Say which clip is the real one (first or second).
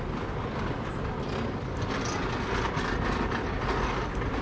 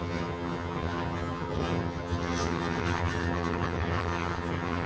first